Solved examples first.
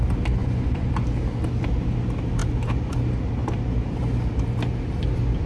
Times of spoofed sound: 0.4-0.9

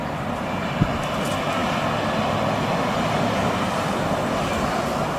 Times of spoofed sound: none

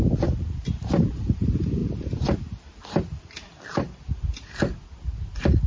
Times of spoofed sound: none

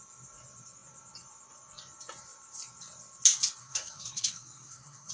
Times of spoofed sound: 3.6-5.1

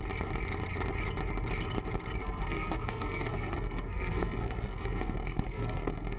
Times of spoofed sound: 2.2-6.2

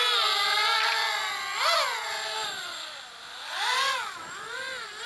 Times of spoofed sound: none

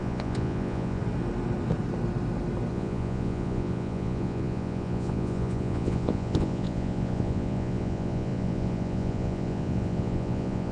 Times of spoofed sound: 0.0-1.0; 2.7-10.7